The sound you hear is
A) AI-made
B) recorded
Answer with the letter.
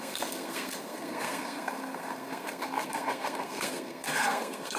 A